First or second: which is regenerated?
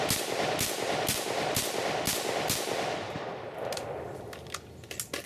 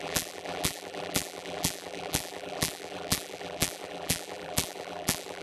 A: second